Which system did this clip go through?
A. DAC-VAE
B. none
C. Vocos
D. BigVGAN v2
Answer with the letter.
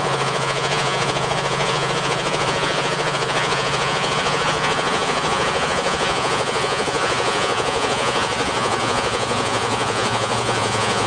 C